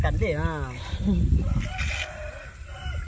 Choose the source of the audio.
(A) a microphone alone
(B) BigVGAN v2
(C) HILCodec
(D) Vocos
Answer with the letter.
A